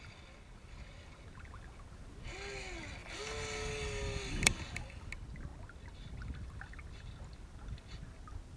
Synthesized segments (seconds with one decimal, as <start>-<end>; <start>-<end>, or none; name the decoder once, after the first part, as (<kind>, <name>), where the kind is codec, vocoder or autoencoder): 3.0-5.1 (vocoder, BigVGAN v2)